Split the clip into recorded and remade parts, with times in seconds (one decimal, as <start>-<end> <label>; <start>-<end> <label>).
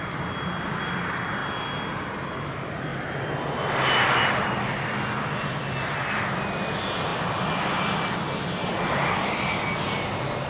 0.0-10.5 recorded